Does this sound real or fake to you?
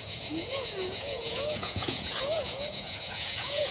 fake